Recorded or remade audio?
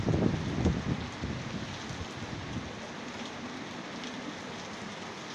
recorded